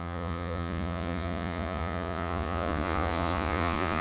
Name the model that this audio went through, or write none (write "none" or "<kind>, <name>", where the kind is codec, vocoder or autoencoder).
vocoder, Vocos